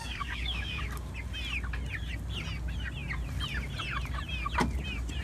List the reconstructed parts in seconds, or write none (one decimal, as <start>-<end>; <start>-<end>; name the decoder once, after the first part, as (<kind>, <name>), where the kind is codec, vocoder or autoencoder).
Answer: 0.0-0.8 (codec, DAC)